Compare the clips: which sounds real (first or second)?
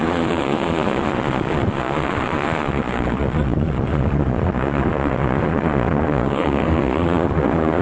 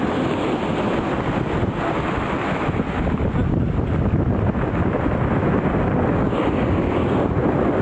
second